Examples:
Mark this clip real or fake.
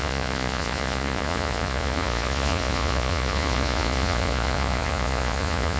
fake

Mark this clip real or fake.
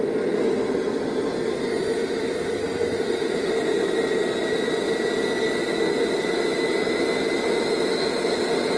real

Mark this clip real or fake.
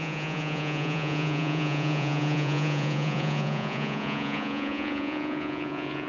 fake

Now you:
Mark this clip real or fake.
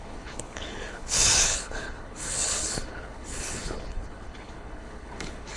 fake